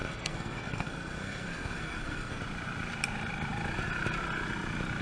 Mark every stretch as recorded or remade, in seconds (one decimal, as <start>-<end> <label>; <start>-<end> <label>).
0.0-2.4 remade; 2.4-5.0 recorded